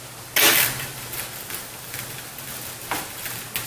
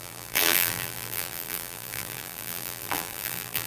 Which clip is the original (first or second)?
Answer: first